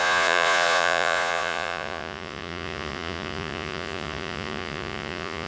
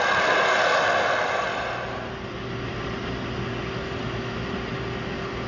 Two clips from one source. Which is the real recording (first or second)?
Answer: second